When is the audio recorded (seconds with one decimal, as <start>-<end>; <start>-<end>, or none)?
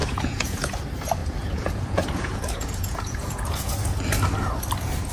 0.7-1.2; 3.9-5.1